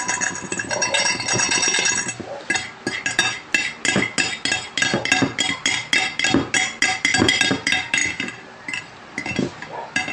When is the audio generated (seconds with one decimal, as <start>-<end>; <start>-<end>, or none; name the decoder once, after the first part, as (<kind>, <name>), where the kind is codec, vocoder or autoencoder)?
8.0-8.8 (vocoder, BigVGAN v2)